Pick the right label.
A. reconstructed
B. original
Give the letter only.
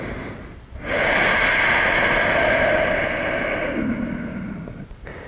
B